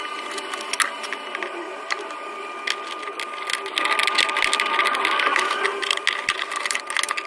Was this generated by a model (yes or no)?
no